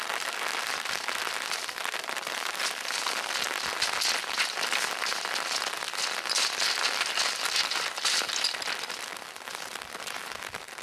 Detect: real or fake real